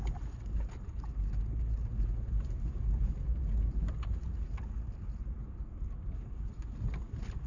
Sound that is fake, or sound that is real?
real